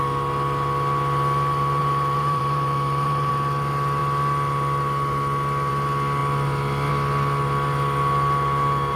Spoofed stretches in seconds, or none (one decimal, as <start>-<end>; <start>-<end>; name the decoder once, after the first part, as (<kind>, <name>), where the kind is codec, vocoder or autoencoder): 1.8-3.3 (vocoder, BigVGAN v2)